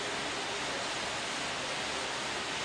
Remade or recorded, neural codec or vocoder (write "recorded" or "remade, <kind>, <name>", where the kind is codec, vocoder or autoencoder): recorded